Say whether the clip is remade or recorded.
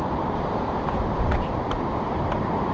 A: remade